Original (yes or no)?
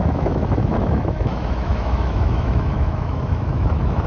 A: no